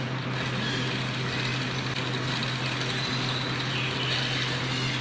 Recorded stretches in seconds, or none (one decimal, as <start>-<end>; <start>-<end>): 0.0-5.0